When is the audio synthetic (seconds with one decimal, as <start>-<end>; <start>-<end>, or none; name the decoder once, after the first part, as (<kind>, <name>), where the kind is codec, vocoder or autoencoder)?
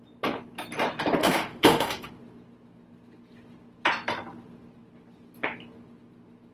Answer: 1.2-2.1 (autoencoder, DAC-VAE)